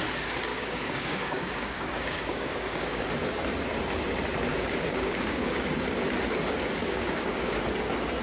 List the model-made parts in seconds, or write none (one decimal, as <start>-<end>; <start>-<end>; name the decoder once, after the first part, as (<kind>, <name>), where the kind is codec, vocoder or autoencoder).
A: 0.5-3.0 (codec, DAC); 4.5-5.7; 6.8-7.6